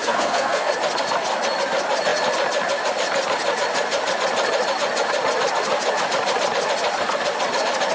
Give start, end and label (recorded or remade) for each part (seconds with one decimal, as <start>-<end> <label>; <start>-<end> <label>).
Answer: 0.0-0.7 remade; 0.7-7.9 recorded